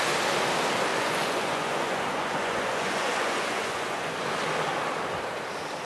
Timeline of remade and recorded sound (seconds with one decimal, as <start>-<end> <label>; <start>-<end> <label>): 0.0-0.9 recorded; 0.9-4.3 remade; 4.3-5.9 recorded